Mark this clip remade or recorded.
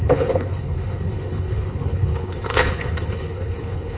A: remade